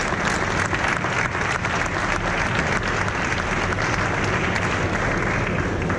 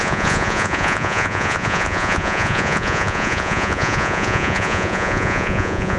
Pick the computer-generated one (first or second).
second